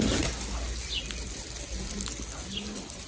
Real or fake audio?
real